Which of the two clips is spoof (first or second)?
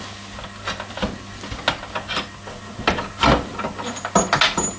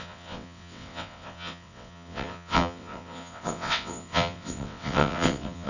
second